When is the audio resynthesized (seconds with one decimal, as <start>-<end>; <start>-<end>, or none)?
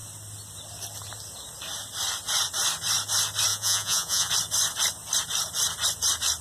3.5-4.3